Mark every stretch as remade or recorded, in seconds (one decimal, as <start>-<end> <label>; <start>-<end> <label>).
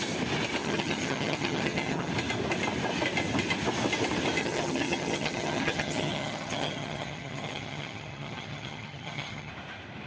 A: 0.0-0.6 recorded; 0.6-2.1 remade; 2.1-4.4 recorded; 4.4-9.5 remade; 9.5-10.1 recorded